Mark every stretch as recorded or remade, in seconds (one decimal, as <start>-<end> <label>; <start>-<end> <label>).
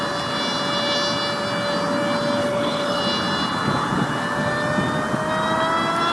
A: 0.0-2.4 recorded; 2.4-3.0 remade; 3.0-6.1 recorded